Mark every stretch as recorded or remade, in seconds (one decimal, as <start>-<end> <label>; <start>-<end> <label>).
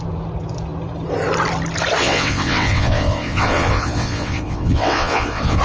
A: 0.0-2.0 recorded; 2.0-5.6 remade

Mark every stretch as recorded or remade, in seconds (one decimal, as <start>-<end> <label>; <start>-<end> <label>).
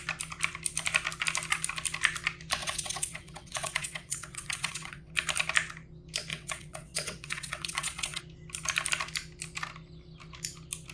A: 0.0-2.6 recorded; 2.6-5.1 remade; 5.1-6.3 recorded; 6.3-8.2 remade; 8.2-10.9 recorded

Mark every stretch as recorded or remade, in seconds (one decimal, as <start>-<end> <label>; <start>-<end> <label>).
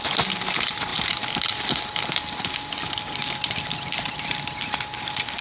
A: 0.0-5.4 recorded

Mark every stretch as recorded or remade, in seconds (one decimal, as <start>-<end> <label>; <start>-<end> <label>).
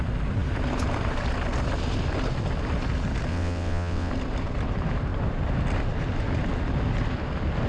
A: 0.0-3.3 recorded; 3.3-4.1 remade; 4.1-7.7 recorded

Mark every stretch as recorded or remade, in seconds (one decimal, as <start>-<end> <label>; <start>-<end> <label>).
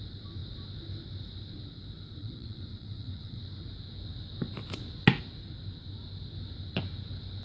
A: 0.0-2.2 recorded; 2.2-3.4 remade; 3.4-7.4 recorded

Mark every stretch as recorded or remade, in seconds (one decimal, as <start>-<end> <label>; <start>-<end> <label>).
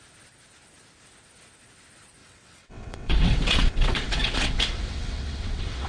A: 0.0-2.2 recorded; 2.2-5.9 remade